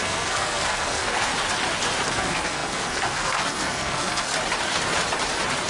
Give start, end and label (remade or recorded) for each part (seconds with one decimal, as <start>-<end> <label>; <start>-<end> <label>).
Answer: 0.0-1.3 remade; 1.3-2.1 recorded; 2.1-4.3 remade; 4.3-5.7 recorded